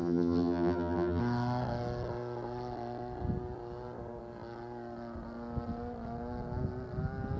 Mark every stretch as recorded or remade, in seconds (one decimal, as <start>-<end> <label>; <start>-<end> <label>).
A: 0.0-1.2 remade; 1.2-7.4 recorded